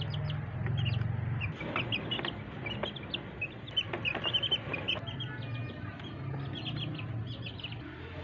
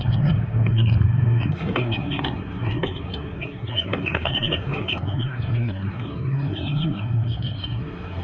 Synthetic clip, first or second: second